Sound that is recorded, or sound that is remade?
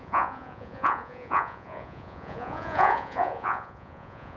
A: remade